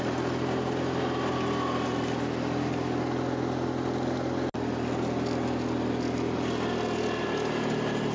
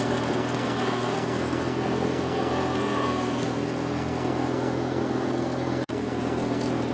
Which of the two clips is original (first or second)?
first